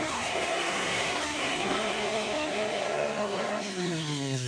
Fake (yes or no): yes